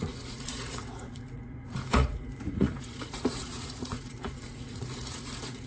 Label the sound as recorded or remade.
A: remade